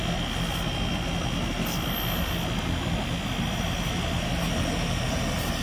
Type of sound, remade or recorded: recorded